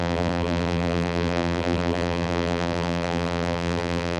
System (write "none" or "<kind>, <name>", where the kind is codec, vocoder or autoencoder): vocoder, BigVGAN v2